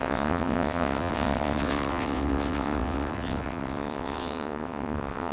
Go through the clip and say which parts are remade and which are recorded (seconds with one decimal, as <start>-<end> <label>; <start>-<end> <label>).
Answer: 0.0-5.3 remade

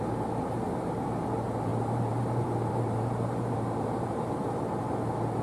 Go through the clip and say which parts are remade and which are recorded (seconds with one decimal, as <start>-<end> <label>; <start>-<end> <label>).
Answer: 0.0-1.7 recorded; 1.7-4.6 remade; 4.6-5.4 recorded

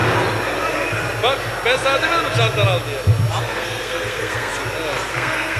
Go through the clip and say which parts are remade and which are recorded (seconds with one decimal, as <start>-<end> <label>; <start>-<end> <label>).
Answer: 0.0-3.4 recorded; 3.4-4.5 remade; 4.5-5.1 recorded; 5.1-5.6 remade

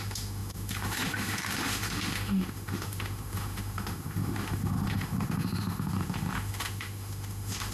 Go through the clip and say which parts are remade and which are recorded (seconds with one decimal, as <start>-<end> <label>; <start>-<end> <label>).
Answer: 0.0-7.7 remade

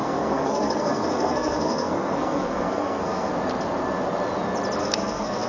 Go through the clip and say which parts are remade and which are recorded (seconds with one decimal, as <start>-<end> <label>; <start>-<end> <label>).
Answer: 0.0-3.3 remade; 3.3-4.8 recorded; 4.8-5.5 remade

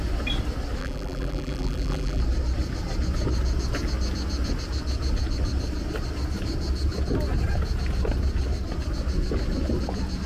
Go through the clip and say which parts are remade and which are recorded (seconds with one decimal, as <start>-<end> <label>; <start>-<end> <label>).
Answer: 0.0-0.8 recorded; 0.8-2.2 remade; 2.2-10.3 recorded

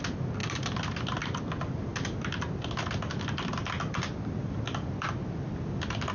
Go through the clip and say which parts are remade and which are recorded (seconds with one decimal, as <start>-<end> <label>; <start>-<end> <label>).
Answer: 0.0-6.1 recorded

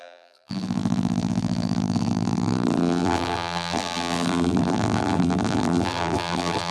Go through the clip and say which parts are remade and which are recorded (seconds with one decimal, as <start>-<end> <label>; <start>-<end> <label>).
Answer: 0.0-6.7 remade